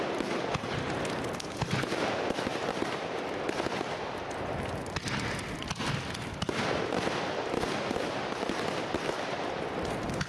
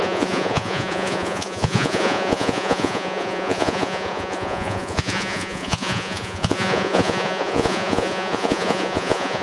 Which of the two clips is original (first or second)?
first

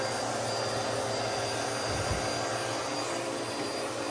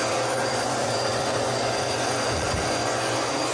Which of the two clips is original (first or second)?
first